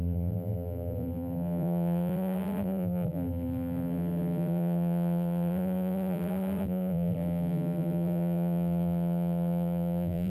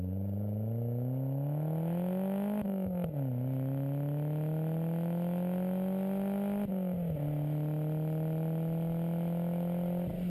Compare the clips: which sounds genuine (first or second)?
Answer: second